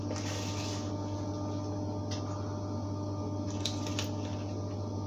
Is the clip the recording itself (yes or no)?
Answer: yes